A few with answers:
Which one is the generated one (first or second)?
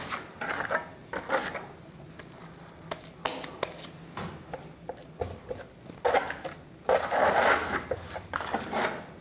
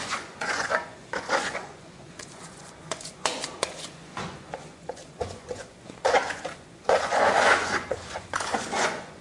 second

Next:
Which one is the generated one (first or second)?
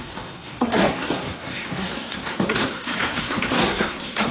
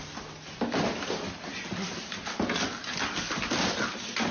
first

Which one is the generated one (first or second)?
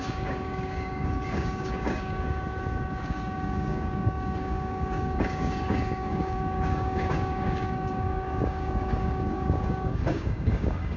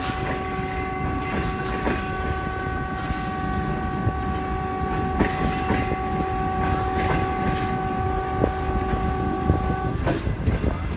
first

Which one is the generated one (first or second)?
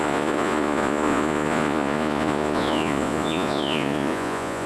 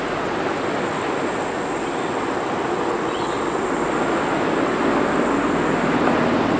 first